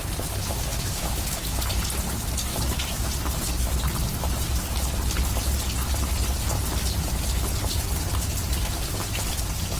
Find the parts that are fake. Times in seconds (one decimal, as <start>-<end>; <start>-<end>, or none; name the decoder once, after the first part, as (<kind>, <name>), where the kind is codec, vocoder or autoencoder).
0.7-1.6 (autoencoder, DAC-VAE); 2.5-3.1

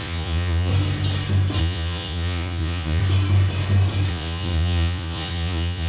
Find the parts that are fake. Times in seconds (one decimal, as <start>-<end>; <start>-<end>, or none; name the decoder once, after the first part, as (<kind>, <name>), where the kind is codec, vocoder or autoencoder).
0.0-0.7 (vocoder, Vocos); 1.6-3.0; 4.1-5.9

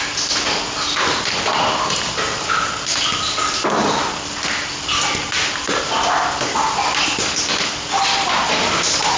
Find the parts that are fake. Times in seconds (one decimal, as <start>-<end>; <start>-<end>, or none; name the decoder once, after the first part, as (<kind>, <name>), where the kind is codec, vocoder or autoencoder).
none